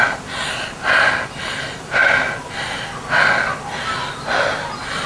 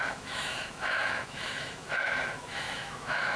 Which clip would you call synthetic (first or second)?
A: second